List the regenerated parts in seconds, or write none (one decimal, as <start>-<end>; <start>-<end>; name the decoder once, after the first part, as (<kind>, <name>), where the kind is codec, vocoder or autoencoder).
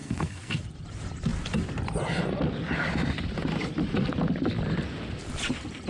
0.0-0.6 (codec, SNAC)